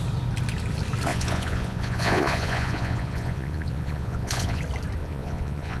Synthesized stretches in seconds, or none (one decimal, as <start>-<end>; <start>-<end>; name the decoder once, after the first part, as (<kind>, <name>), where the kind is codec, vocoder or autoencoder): 1.1-4.6 (vocoder, Vocos); 5.0-5.8